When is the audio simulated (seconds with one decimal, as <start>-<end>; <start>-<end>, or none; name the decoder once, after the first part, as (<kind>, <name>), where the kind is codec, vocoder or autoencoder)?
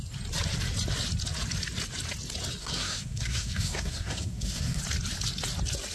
2.6-4.8 (codec, SNAC)